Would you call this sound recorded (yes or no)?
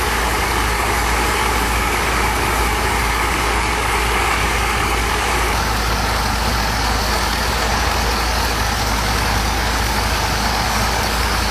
no